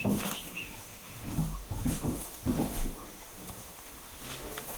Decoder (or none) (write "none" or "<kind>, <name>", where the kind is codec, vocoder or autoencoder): autoencoder, DAC-VAE